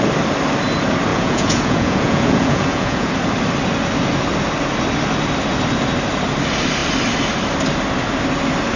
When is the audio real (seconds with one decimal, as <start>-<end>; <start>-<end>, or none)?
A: 0.0-1.1; 3.1-8.8